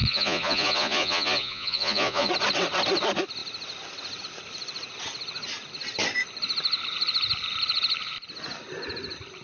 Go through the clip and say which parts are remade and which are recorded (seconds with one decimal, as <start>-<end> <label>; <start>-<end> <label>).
0.0-2.3 remade; 2.3-9.4 recorded